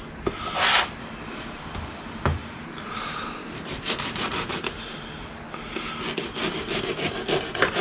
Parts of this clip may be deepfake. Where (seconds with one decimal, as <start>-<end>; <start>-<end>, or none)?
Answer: 2.4-5.4